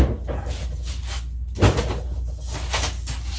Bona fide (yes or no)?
yes